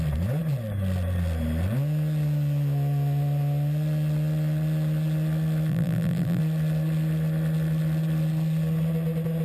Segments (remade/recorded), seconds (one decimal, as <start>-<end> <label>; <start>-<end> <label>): 0.0-5.7 recorded; 5.7-6.4 remade; 6.4-9.4 recorded